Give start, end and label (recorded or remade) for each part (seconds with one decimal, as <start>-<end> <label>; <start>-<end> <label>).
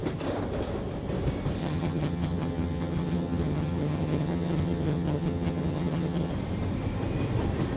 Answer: 0.0-1.6 recorded; 1.6-6.3 remade; 6.3-7.8 recorded